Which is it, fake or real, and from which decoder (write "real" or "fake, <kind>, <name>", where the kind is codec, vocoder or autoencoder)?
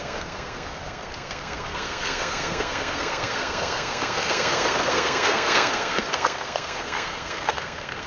fake, codec, SNAC